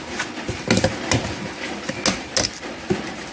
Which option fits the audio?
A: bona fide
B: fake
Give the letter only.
A